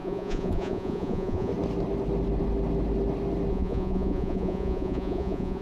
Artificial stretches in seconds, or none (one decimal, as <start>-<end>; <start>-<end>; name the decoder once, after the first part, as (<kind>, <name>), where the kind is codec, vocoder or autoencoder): 0.0-1.5 (vocoder, Vocos); 3.5-5.6